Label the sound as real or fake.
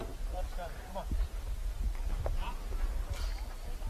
real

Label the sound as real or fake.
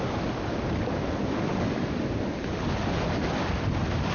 real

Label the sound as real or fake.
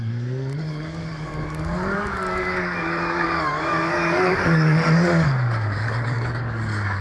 fake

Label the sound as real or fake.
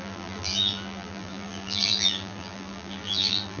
fake